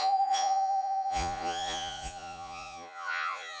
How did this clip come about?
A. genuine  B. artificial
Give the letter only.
B